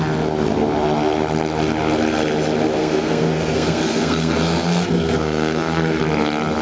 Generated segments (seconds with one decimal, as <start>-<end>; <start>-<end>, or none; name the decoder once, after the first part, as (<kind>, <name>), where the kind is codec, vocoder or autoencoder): 2.8-6.0 (codec, SNAC)